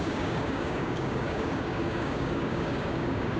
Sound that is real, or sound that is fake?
fake